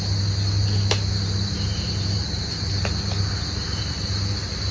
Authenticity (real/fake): real